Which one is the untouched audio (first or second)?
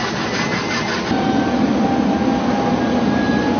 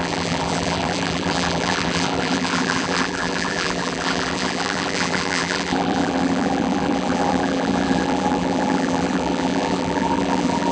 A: first